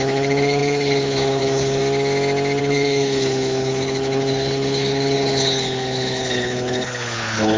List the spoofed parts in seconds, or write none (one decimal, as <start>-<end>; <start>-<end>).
0.0-1.8; 2.6-7.6

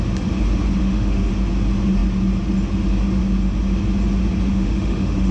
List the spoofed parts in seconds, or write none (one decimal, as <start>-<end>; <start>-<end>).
0.8-1.3; 4.5-5.3